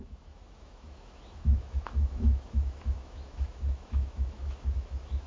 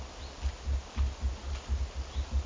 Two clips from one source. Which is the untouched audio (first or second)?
second